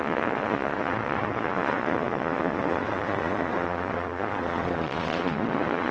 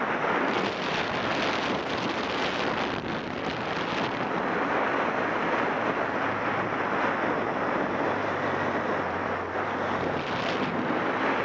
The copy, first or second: first